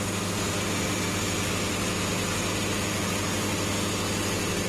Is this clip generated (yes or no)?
no